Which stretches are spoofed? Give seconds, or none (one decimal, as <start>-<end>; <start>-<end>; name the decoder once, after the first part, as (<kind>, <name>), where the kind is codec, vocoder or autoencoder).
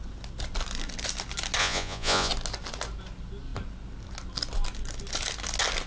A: 1.6-2.3 (vocoder, Vocos)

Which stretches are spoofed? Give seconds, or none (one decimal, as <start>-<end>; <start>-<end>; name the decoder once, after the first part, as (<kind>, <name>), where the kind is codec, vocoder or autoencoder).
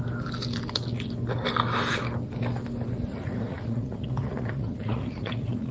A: 3.1-5.7 (vocoder, Vocos)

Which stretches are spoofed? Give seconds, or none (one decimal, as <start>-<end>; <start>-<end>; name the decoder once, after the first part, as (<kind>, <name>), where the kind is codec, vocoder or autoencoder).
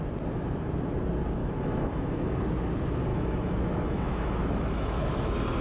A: 1.4-2.3 (autoencoder, DAC-VAE); 3.1-5.1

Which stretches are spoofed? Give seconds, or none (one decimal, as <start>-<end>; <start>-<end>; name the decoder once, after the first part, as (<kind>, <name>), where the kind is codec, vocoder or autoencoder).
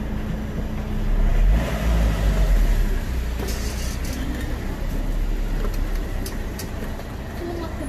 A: none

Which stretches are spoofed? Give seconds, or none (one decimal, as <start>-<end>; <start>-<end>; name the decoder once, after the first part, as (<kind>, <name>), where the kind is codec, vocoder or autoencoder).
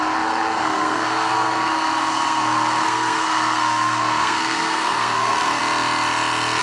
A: 0.0-5.6 (codec, SNAC)